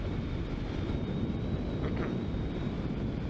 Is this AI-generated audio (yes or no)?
no